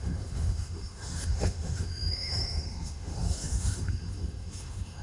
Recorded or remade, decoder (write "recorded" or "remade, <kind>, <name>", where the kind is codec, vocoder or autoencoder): remade, autoencoder, DAC-VAE